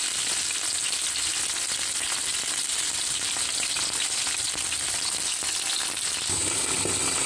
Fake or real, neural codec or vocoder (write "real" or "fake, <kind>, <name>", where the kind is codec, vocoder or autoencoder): real